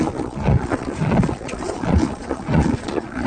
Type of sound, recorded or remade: remade